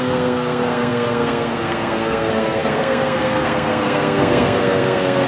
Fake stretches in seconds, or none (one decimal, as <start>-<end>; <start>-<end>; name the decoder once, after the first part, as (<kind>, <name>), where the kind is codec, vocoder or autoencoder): 0.0-5.3 (codec, SNAC)